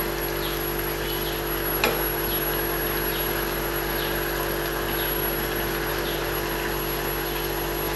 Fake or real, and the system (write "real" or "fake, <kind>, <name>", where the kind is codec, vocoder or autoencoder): real